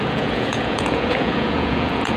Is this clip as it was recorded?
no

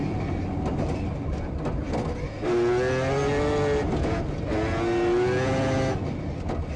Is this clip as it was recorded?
yes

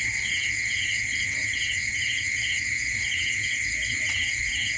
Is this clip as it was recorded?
no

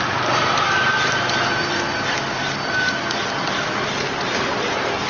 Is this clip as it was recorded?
yes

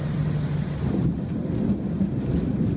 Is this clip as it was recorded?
yes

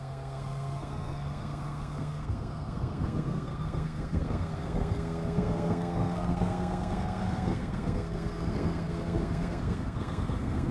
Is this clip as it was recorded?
no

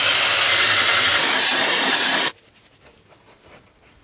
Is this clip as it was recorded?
no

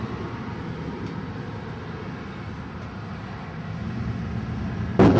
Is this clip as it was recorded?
yes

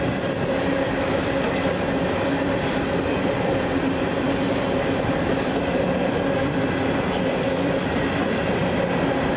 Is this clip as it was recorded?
no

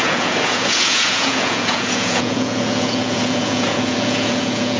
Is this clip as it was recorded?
no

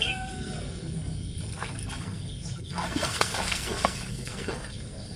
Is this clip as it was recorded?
no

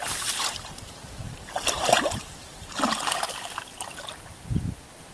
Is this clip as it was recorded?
yes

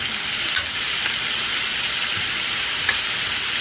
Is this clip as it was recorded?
yes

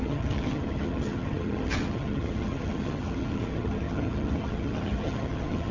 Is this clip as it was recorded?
no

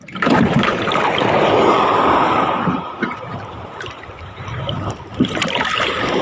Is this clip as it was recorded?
no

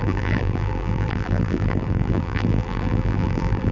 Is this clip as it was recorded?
no